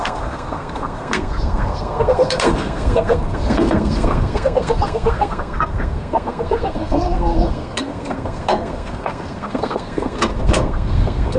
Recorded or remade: remade